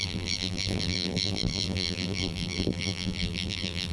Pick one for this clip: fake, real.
fake